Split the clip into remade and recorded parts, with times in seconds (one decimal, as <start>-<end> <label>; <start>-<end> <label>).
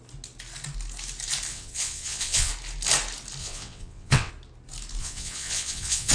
0.0-1.5 recorded; 1.5-2.5 remade; 2.5-3.4 recorded; 3.4-4.3 remade; 4.3-5.0 recorded; 5.0-6.1 remade